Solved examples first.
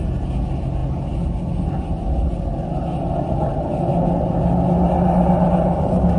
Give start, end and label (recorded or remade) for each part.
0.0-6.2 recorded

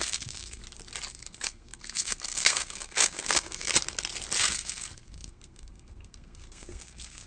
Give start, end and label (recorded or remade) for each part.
0.0-0.6 remade; 0.6-1.1 recorded; 1.1-3.7 remade; 3.7-4.4 recorded; 4.4-7.3 remade

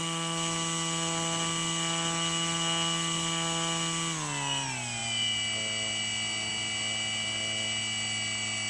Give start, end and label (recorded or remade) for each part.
0.0-8.7 recorded

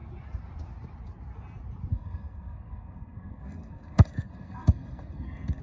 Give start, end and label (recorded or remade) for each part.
0.0-1.9 recorded; 1.9-5.6 remade

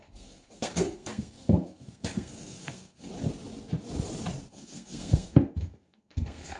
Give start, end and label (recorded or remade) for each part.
0.0-3.1 remade; 3.1-4.5 recorded; 4.5-6.6 remade

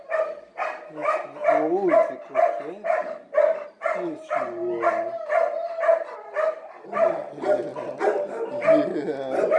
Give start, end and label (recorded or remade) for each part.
0.0-9.6 recorded

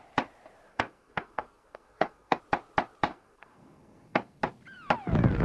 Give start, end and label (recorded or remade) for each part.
0.0-0.7 recorded; 0.7-2.4 remade; 2.4-3.1 recorded; 3.1-4.4 remade; 4.4-5.4 recorded

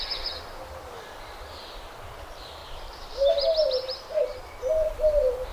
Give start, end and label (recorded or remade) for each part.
0.0-2.6 recorded; 2.6-3.4 remade; 3.4-5.5 recorded